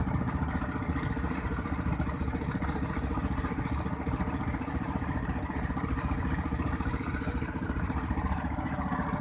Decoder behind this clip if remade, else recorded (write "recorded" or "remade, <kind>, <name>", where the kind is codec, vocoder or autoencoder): recorded